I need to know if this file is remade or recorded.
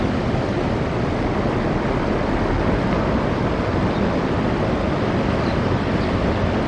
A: recorded